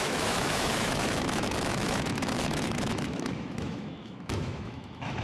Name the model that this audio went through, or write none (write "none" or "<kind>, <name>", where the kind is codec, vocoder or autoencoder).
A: autoencoder, DAC-VAE